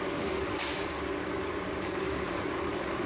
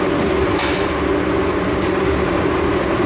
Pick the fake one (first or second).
first